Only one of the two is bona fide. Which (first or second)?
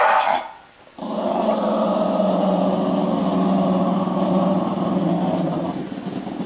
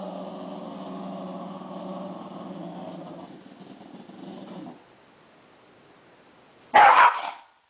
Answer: second